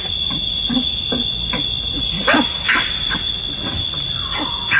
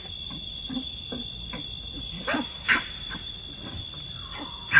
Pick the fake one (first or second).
second